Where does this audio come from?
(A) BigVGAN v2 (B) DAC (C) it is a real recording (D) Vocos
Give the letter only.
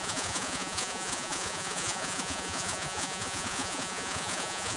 D